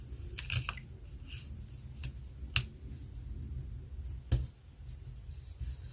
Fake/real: real